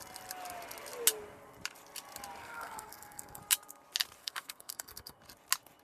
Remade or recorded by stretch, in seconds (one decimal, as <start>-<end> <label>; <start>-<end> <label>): 0.0-2.4 recorded; 2.4-3.4 remade; 3.4-4.2 recorded; 4.2-5.2 remade; 5.2-5.8 recorded